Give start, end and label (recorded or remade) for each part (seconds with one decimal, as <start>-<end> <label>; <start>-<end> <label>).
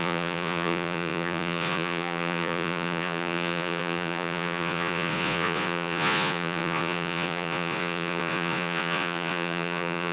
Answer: 0.0-10.1 remade